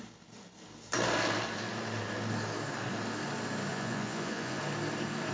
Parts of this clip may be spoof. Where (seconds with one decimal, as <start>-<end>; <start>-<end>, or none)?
3.7-4.6